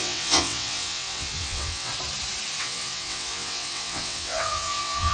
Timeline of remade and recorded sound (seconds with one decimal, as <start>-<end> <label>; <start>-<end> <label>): 0.0-1.9 remade; 1.9-2.6 recorded; 2.6-5.1 remade